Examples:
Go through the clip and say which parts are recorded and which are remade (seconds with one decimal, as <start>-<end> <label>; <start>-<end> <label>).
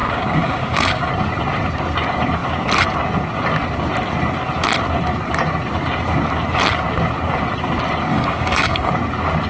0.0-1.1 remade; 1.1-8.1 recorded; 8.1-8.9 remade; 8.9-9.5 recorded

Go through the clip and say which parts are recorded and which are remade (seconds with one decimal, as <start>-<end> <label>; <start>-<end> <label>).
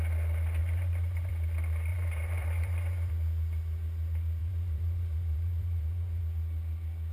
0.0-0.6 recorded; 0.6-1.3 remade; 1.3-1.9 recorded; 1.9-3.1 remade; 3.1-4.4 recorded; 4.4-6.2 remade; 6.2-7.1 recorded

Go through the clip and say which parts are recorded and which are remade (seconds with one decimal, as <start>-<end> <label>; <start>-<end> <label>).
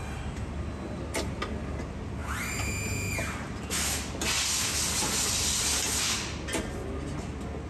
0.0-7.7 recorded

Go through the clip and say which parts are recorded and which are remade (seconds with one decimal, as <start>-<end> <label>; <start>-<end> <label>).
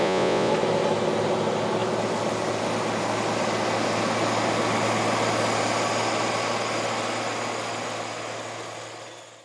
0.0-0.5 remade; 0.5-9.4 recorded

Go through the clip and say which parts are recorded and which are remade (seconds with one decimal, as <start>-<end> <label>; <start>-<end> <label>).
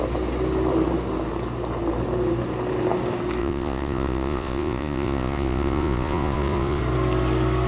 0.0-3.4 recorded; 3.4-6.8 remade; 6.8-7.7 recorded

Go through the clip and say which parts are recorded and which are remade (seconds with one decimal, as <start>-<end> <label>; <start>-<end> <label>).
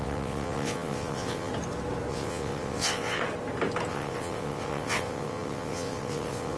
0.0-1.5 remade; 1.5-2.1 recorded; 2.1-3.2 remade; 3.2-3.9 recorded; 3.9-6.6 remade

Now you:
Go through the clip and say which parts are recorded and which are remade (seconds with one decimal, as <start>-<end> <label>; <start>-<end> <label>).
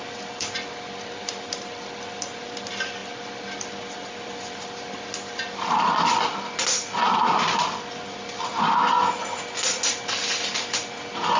0.0-11.4 recorded